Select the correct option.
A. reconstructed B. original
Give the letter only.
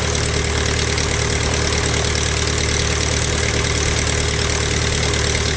B